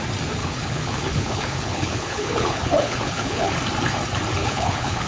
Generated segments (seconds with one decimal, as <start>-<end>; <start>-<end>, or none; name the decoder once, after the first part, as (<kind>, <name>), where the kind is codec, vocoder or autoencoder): 0.4-3.5 (codec, HILCodec); 4.4-5.1

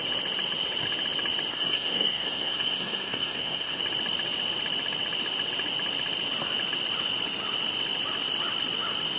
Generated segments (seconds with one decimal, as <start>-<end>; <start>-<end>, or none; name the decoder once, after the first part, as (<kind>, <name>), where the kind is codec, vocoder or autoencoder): 1.5-3.8 (codec, SNAC)

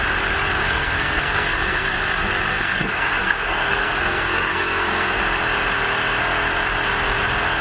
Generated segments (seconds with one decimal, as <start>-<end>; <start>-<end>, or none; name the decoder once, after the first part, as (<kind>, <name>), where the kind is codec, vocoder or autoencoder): 0.6-2.0 (codec, SNAC); 2.5-5.2

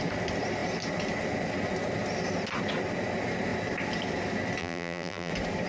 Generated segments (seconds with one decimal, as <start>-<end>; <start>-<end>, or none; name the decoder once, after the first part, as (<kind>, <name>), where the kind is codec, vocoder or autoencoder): 4.6-5.3 (vocoder, BigVGAN v2)

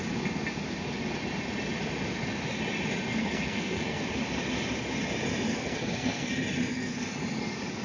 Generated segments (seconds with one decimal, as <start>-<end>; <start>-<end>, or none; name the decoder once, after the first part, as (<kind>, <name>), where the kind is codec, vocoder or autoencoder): 3.2-4.0 (codec, SNAC); 5.5-6.3

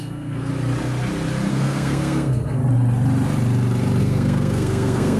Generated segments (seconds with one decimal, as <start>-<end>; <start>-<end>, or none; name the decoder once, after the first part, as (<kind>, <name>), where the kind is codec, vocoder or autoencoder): 0.0-0.5 (codec, SNAC); 1.5-2.6; 4.0-5.2

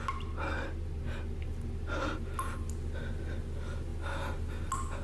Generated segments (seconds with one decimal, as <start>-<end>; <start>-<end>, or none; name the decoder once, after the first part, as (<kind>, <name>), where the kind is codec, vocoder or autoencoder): none